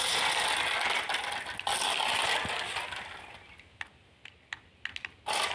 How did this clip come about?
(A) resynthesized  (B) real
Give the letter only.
B